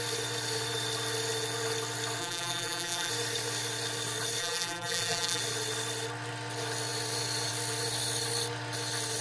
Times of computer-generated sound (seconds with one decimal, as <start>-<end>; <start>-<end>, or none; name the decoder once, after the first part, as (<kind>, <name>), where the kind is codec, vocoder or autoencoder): 2.2-3.1 (vocoder, BigVGAN v2); 4.4-5.4